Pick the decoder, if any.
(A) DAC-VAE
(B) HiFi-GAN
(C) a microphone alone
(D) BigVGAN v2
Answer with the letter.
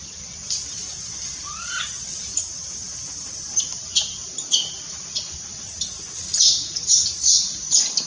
C